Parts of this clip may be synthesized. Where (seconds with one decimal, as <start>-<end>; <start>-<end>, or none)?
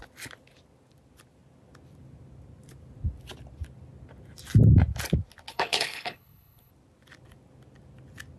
5.5-6.7